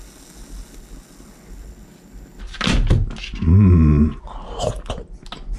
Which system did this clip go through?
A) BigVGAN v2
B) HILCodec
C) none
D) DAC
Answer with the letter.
C